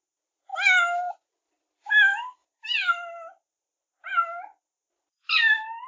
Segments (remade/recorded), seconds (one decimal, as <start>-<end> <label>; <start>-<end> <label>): 0.0-5.9 recorded